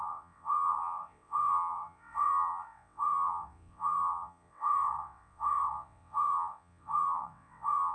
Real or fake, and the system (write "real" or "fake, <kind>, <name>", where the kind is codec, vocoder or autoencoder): fake, vocoder, WaveNeXt